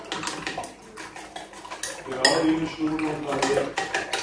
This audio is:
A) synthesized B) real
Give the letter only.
B